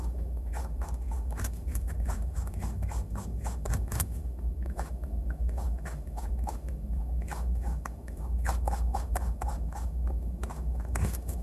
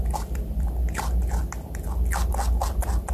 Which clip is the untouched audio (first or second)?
second